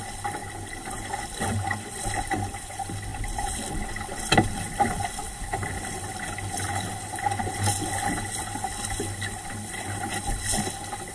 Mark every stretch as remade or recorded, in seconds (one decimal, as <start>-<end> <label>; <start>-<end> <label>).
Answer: 0.0-11.1 recorded